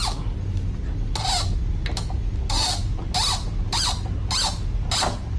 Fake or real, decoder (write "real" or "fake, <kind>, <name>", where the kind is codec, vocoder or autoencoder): real